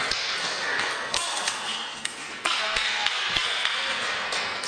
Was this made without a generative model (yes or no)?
no